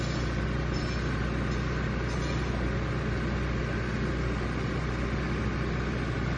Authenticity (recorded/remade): recorded